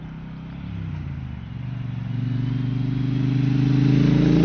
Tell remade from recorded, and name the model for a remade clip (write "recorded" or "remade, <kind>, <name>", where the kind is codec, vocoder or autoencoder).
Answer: recorded